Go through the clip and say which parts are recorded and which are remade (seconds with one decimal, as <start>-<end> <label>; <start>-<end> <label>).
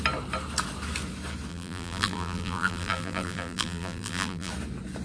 0.0-1.5 recorded; 1.5-4.5 remade; 4.5-5.0 recorded